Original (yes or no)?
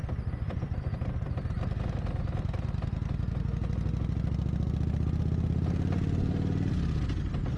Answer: yes